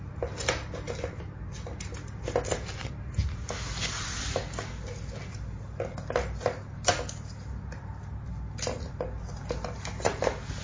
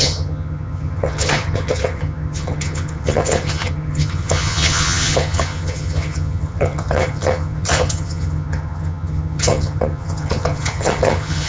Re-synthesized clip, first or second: second